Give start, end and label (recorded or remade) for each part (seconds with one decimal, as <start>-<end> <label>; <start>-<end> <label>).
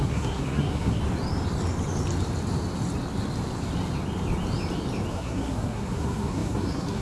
0.0-1.0 remade; 1.0-5.1 recorded; 5.1-7.0 remade